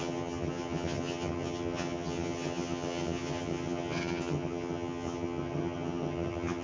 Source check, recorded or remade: remade